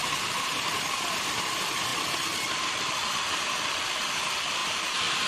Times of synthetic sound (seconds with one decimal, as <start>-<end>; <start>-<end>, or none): 4.6-5.3